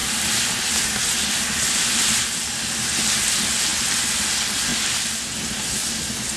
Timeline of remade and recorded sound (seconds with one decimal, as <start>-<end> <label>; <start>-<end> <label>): 0.0-6.4 recorded